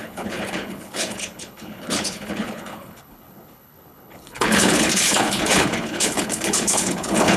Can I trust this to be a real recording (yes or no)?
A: no